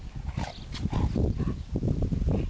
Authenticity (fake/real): real